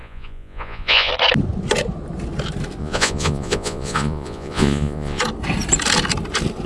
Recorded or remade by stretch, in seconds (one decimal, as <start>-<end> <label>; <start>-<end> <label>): 0.0-1.1 remade; 1.1-2.8 recorded; 2.8-5.2 remade; 5.2-6.7 recorded